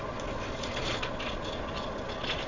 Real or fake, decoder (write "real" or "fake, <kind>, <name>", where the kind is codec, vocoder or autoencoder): fake, vocoder, Vocos